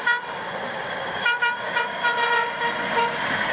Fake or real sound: real